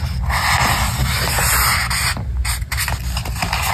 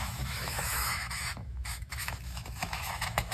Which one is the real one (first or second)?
first